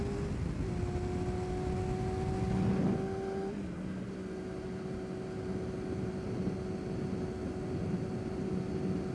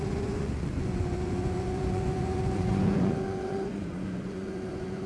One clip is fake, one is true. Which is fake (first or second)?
second